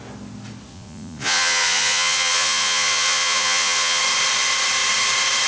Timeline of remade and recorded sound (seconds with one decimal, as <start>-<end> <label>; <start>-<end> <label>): 0.0-0.7 recorded; 0.7-4.0 remade; 4.0-5.5 recorded